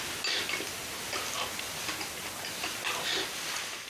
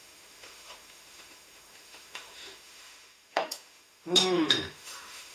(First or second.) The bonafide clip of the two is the first